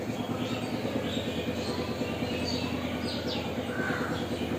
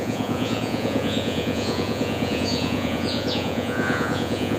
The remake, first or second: second